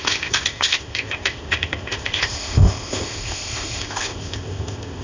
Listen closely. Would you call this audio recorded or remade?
remade